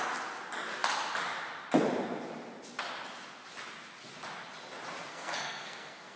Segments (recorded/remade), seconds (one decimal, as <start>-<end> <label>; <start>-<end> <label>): 0.0-5.1 recorded; 5.1-6.2 remade